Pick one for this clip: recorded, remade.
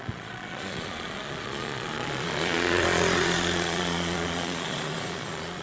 remade